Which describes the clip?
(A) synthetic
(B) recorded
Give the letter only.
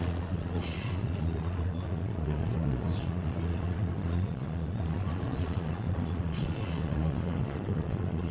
A